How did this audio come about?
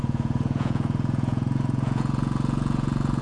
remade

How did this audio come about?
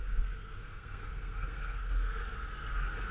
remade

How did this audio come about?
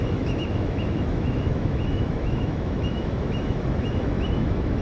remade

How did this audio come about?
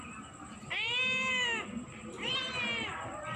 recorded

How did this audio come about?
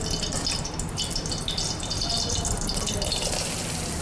recorded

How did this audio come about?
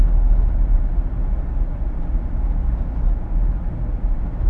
recorded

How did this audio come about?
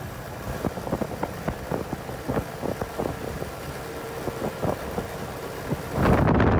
recorded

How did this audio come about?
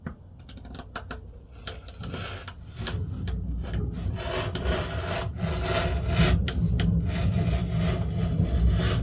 recorded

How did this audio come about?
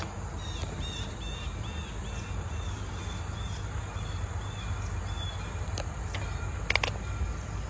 recorded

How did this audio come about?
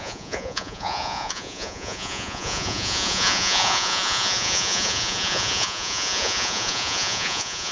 remade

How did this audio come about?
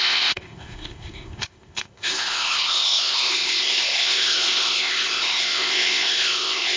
remade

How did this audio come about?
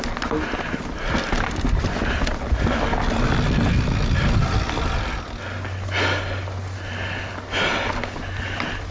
recorded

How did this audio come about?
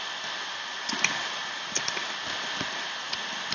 recorded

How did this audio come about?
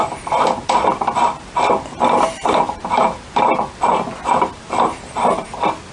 recorded